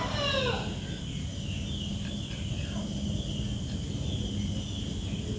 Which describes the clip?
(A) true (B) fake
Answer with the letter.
A